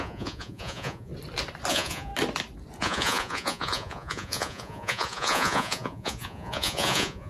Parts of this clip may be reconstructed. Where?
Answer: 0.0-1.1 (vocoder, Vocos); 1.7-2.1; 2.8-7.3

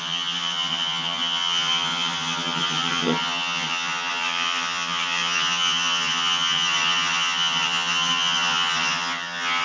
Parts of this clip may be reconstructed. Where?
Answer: 0.0-9.6 (vocoder, HiFi-GAN)

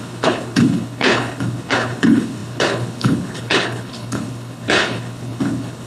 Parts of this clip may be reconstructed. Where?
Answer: 0.0-5.9 (codec, HILCodec)

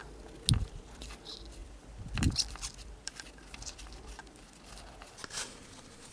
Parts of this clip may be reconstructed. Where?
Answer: 1.6-4.4 (vocoder, BigVGAN v2)

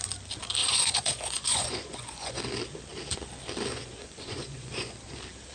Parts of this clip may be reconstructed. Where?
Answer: 0.6-2.4 (vocoder, Vocos); 3.7-4.9

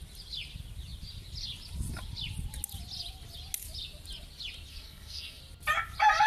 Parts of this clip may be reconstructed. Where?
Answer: 4.7-5.4 (codec, SNAC)